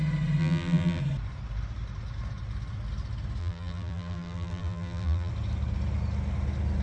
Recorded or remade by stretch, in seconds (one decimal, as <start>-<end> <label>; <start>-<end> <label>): 0.0-0.4 recorded; 0.4-1.0 remade; 1.0-3.4 recorded; 3.4-5.3 remade; 5.3-6.8 recorded